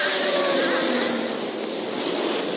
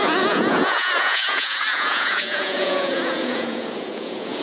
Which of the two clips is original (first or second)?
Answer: first